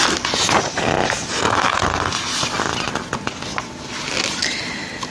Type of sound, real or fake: real